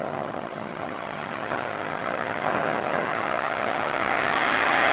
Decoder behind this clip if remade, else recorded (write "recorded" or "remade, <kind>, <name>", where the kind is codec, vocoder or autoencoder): remade, vocoder, HiFi-GAN